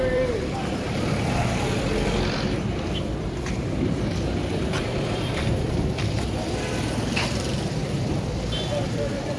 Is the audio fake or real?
fake